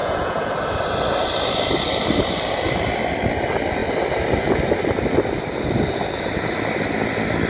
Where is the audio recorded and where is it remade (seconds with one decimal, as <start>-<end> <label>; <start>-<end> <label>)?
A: 0.0-0.5 remade; 0.5-7.5 recorded